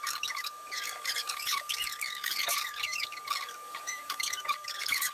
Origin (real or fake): fake